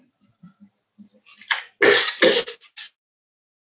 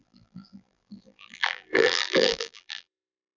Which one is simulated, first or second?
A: second